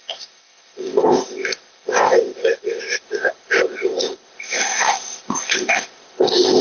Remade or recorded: remade